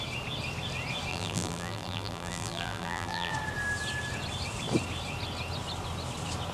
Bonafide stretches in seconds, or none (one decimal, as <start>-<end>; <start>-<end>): 0.0-1.1; 3.3-6.5